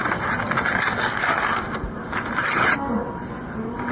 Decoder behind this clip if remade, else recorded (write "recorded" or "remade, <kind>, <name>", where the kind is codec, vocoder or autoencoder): recorded